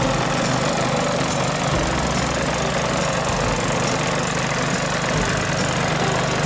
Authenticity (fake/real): real